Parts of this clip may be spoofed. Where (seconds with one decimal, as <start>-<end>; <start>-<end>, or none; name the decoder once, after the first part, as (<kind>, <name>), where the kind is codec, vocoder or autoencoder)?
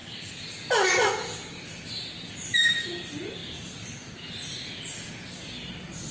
none